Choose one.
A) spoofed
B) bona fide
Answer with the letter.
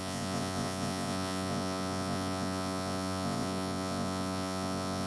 A